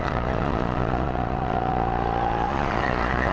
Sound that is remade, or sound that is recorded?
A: remade